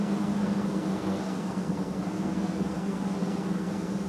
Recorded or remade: remade